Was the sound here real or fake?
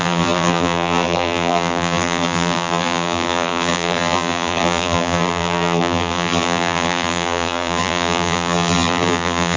fake